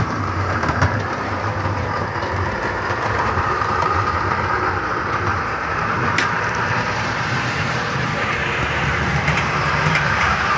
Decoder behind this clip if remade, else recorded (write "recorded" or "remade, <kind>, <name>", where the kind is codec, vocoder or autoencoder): remade, vocoder, BigVGAN v2